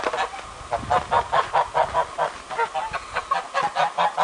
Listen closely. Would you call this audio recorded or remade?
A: recorded